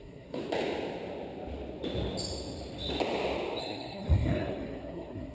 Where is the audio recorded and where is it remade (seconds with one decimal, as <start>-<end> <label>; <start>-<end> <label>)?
0.0-0.4 remade; 0.4-3.6 recorded; 3.6-5.3 remade